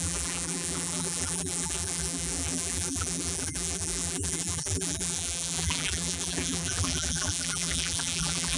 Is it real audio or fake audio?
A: fake